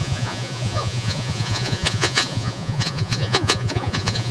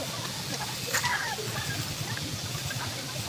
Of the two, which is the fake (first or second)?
first